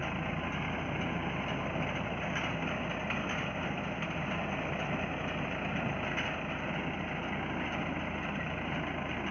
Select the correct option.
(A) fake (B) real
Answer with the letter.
B